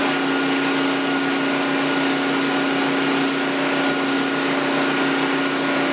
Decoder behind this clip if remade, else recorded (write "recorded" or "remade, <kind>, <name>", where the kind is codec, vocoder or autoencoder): recorded